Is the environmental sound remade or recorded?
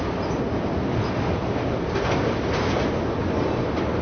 recorded